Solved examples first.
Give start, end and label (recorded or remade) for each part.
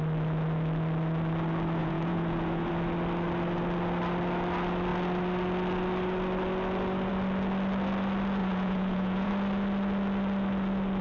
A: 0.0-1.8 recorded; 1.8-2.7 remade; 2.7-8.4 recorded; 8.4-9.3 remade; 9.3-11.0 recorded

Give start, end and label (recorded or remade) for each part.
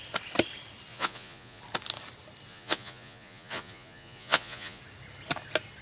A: 0.0-0.9 recorded; 0.9-1.6 remade; 1.6-2.5 recorded; 2.5-4.8 remade; 4.8-5.8 recorded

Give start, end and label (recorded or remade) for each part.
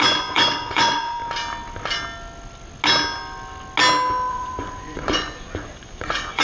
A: 0.0-1.2 remade; 1.2-4.3 recorded; 4.3-6.4 remade